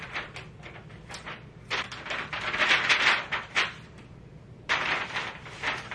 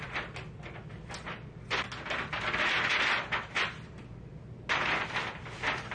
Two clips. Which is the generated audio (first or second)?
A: first